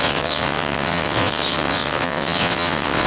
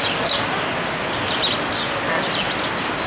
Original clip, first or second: second